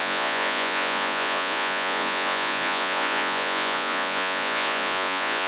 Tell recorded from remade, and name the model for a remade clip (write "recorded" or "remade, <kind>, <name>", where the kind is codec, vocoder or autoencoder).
remade, vocoder, Vocos